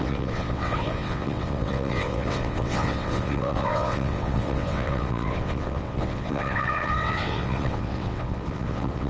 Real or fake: fake